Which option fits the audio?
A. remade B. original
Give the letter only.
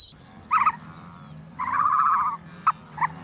B